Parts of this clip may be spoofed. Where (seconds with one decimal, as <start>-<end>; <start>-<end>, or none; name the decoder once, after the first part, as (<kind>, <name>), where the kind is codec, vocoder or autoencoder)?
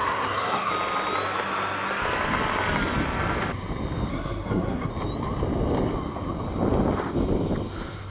0.0-0.7 (codec, SNAC); 4.1-4.9